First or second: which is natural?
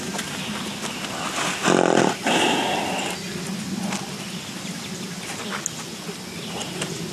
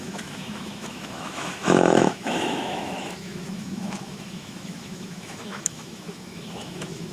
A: first